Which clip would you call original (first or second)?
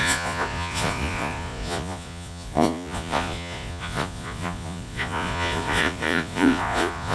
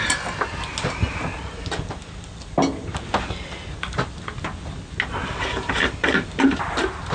second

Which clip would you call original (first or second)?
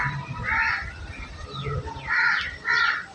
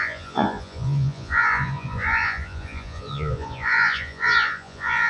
first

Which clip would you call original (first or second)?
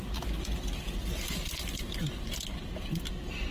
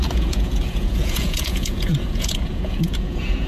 first